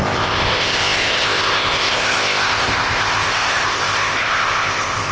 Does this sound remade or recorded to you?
remade